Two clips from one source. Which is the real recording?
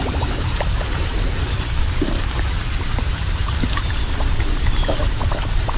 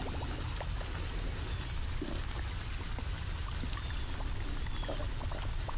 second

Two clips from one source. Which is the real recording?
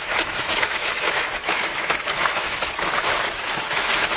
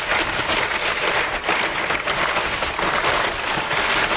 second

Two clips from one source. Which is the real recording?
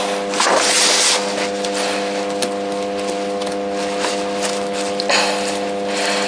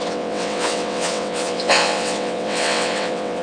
first